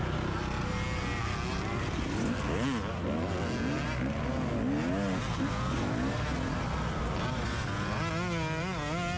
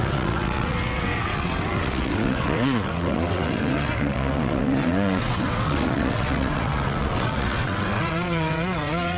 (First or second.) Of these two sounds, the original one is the first